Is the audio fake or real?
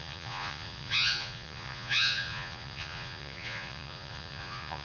fake